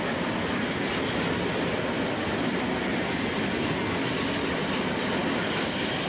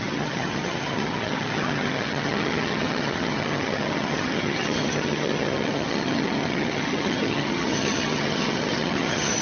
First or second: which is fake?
second